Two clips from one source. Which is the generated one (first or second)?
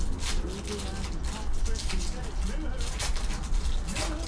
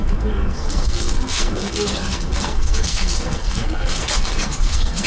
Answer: second